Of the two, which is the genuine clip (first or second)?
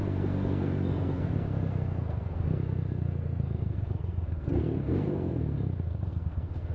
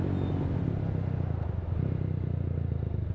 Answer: second